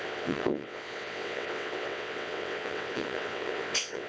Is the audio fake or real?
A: fake